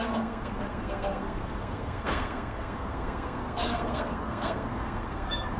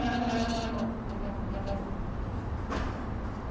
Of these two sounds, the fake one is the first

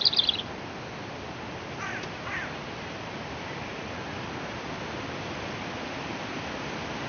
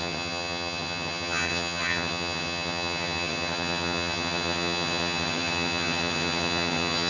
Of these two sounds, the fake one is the second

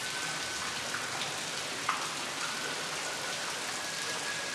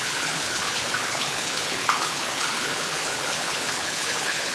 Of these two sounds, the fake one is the second